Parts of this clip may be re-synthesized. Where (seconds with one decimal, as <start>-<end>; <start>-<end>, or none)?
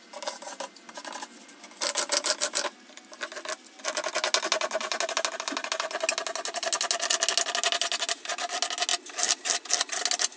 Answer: none